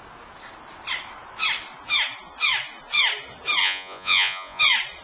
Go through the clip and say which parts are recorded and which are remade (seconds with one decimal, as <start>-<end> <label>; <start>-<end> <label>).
0.0-3.6 recorded; 3.6-4.6 remade; 4.6-5.0 recorded